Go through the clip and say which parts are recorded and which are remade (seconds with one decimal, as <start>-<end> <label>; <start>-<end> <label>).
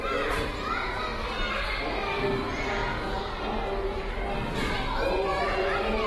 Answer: 0.0-2.8 recorded; 2.8-3.4 remade; 3.4-5.3 recorded; 5.3-6.1 remade